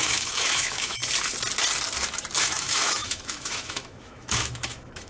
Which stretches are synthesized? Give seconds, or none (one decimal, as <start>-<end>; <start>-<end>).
0.0-1.0; 2.4-5.1